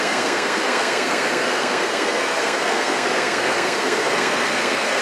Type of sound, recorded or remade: remade